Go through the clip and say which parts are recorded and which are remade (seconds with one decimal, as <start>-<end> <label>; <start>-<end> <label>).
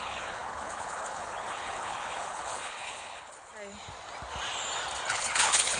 0.0-3.5 remade; 3.5-5.1 recorded; 5.1-5.8 remade